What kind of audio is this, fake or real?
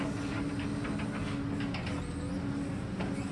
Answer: real